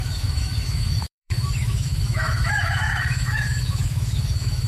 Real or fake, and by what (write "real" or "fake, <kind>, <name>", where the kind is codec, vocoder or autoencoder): fake, autoencoder, DAC-VAE